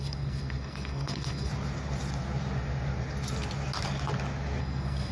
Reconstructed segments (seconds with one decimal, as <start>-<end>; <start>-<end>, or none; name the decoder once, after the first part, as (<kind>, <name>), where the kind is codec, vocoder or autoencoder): 0.0-1.5 (codec, SNAC); 4.6-5.1